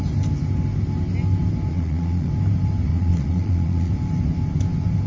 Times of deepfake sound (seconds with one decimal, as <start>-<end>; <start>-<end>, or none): 1.7-2.3; 2.9-3.9